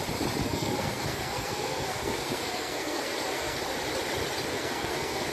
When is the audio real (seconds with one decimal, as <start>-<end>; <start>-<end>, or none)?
0.0-0.4; 3.6-4.5